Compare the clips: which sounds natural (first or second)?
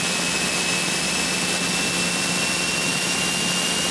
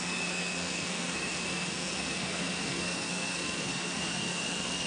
first